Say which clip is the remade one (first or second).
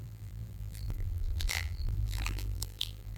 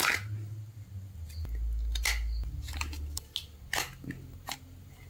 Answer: first